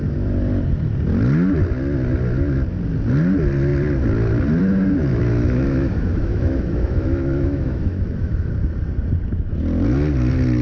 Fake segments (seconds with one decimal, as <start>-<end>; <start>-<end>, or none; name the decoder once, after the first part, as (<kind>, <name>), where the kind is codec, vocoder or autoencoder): 5.1-8.5 (autoencoder, DAC-VAE)